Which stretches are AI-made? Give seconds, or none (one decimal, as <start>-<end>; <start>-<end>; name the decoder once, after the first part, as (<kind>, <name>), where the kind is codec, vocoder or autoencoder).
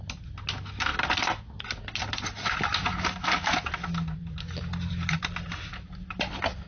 none